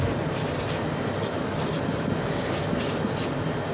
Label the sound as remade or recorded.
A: recorded